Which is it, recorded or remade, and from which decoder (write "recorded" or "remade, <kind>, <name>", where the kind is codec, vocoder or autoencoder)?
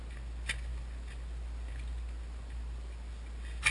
recorded